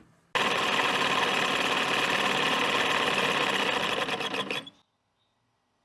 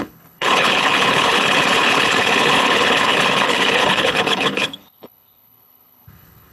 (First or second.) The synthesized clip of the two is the second